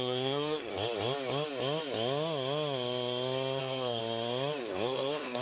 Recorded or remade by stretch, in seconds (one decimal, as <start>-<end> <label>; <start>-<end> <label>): 0.0-0.7 remade; 0.7-3.6 recorded; 3.6-4.0 remade; 4.0-4.6 recorded; 4.6-5.4 remade